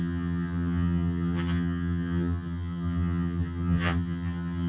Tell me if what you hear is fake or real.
fake